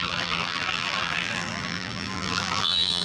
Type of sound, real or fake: fake